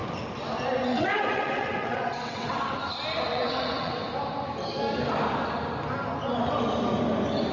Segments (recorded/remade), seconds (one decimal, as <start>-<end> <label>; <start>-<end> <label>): 0.0-0.9 recorded; 0.9-2.8 remade; 2.8-3.3 recorded; 3.3-4.0 remade; 4.0-7.5 recorded

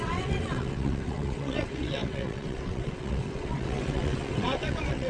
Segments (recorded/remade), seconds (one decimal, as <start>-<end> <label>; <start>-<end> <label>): 0.0-5.1 remade

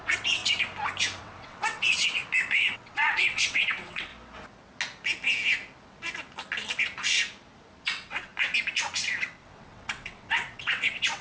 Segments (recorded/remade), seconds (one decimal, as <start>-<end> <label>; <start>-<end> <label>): 0.0-0.4 remade; 0.4-1.2 recorded; 1.2-2.2 remade; 2.2-2.7 recorded; 2.7-4.1 remade; 4.1-7.8 recorded; 7.8-8.3 remade; 8.3-9.2 recorded; 9.2-11.2 remade